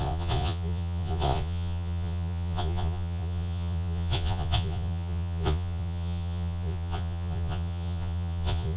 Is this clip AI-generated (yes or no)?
yes